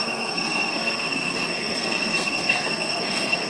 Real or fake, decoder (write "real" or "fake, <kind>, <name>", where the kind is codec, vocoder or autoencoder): fake, codec, SNAC